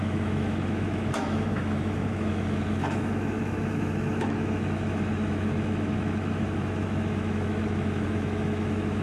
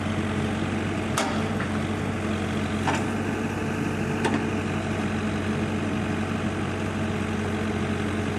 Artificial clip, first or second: first